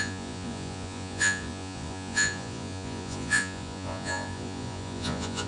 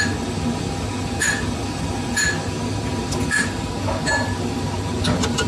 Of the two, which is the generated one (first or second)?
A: first